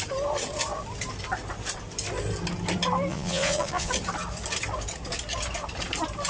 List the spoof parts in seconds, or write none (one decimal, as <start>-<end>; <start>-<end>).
3.1-3.9

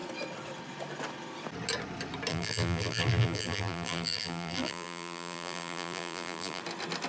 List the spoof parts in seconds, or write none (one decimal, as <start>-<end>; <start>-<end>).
2.3-6.6

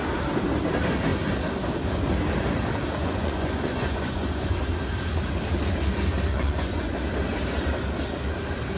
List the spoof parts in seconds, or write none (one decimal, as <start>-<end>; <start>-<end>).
3.0-4.6; 6.3-6.9

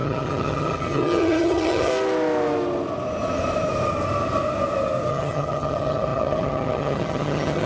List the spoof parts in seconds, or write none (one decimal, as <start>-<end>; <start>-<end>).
0.0-1.9; 5.1-7.7

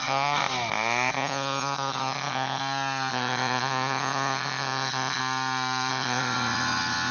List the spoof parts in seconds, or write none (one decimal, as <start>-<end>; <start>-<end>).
0.0-0.4; 1.1-2.6; 3.1-5.2; 5.9-7.1